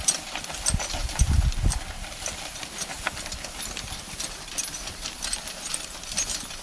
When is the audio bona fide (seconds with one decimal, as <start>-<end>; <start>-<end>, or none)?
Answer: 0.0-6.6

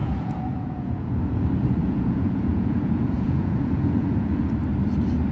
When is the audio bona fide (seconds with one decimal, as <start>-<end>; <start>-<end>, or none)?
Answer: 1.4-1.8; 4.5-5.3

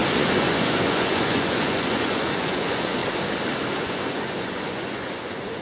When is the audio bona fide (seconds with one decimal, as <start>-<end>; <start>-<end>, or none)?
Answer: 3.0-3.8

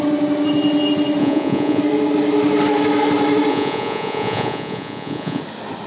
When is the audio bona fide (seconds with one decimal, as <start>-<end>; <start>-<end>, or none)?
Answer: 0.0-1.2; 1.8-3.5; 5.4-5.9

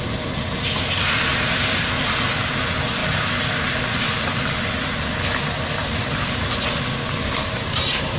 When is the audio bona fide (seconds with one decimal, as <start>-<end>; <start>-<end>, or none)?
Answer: 0.0-8.2

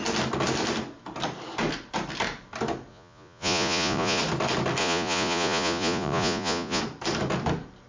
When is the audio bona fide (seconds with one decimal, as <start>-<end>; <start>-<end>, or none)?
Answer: 0.0-2.9; 4.2-4.8; 6.8-7.9

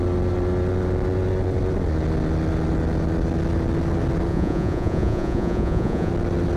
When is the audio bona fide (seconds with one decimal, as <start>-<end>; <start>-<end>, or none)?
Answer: 0.0-4.3; 6.1-6.6

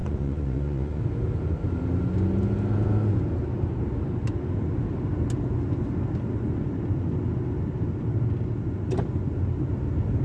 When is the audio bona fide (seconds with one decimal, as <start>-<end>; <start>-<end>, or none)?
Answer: 1.0-10.2